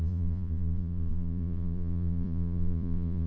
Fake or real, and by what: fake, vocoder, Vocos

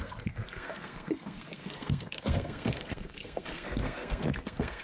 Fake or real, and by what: fake, codec, SNAC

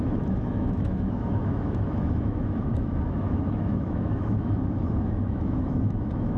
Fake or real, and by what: fake, autoencoder, DAC-VAE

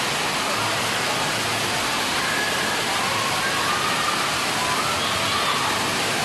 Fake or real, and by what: real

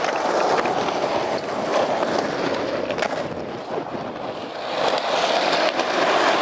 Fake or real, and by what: real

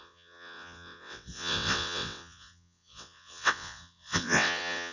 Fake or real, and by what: fake, vocoder, WaveNeXt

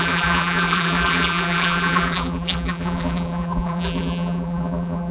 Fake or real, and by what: fake, vocoder, BigVGAN v2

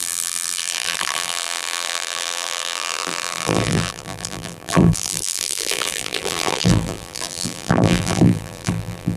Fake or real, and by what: fake, vocoder, BigVGAN v2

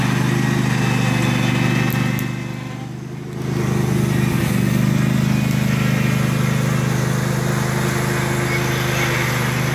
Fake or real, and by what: real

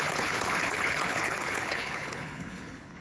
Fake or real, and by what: fake, codec, HILCodec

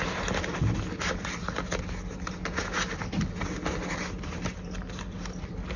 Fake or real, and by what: real